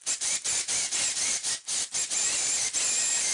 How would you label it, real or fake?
real